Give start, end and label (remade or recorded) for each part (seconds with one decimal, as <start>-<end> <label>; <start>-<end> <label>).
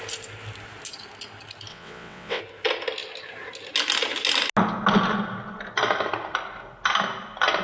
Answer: 0.0-1.7 recorded; 1.7-2.4 remade; 2.4-7.6 recorded